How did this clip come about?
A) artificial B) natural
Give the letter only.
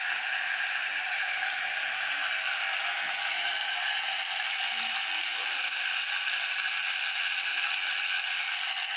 B